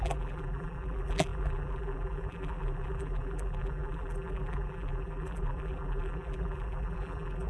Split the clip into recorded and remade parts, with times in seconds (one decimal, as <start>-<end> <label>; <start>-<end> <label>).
0.0-7.5 remade